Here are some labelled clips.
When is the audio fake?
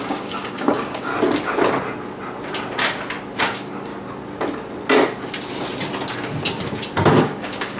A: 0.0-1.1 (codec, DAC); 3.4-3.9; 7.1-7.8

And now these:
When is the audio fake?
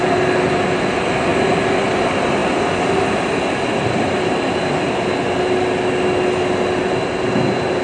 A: none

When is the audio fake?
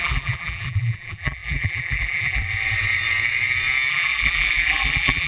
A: 0.0-2.4 (vocoder, BigVGAN v2); 3.9-5.3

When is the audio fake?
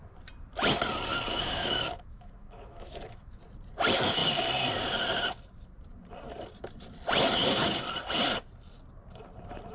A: 1.3-3.4 (autoencoder, DAC-VAE)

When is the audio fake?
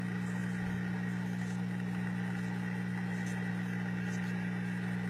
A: none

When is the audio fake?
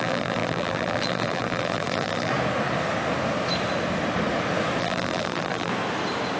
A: 0.0-2.3 (vocoder, BigVGAN v2); 4.8-5.7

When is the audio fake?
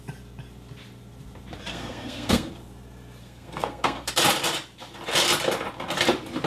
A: 1.7-2.5 (codec, SNAC); 3.2-4.1